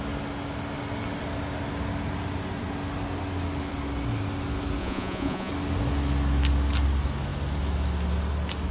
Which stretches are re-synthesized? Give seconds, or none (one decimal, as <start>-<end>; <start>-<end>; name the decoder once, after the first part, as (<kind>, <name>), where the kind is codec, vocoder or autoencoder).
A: 4.8-5.5 (vocoder, Vocos)